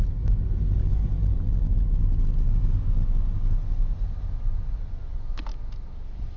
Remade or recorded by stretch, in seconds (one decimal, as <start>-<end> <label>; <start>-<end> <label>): 0.0-6.4 recorded